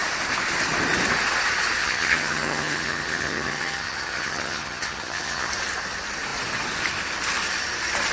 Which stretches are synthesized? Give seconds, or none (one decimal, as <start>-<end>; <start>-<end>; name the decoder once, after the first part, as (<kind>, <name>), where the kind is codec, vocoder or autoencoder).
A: 1.8-5.5 (vocoder, HiFi-GAN)